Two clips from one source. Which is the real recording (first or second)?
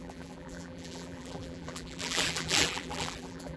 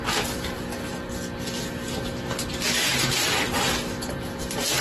second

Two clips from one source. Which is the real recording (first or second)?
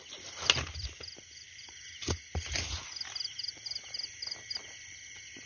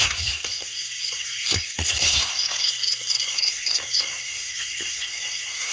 first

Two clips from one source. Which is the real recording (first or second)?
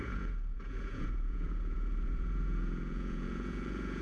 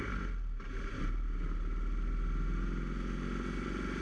second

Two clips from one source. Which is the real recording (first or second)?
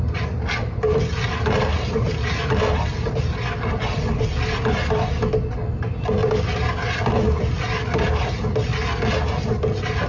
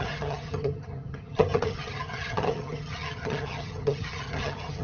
first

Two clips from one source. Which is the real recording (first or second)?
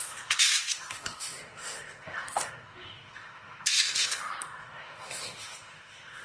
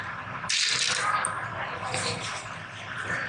second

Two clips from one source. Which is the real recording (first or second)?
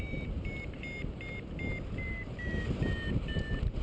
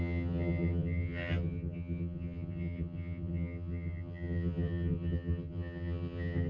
first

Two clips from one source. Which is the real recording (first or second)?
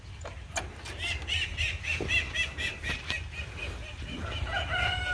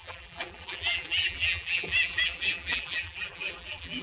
first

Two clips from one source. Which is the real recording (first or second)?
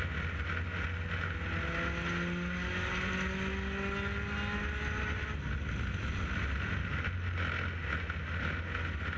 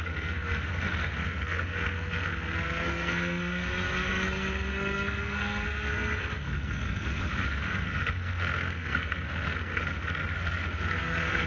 first